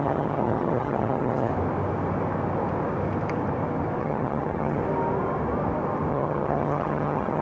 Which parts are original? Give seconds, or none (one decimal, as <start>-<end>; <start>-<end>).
1.5-4.0; 4.8-6.1